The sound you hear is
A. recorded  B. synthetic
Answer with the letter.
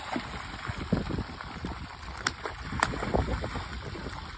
A